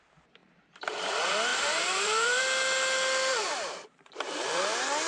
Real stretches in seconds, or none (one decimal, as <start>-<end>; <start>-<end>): 0.0-0.4; 1.1-1.5; 2.4-3.3; 4.5-5.1